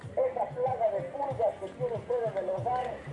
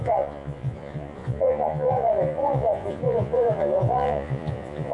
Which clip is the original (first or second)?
first